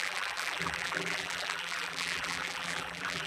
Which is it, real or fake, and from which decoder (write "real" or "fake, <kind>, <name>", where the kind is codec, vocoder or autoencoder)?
fake, vocoder, BigVGAN v2